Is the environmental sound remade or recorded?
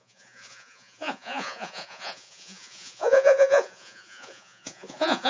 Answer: remade